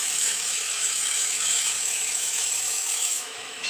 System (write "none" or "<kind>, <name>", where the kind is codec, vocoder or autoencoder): autoencoder, DAC-VAE